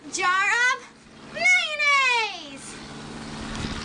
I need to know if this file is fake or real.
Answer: real